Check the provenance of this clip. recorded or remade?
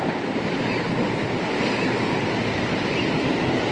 remade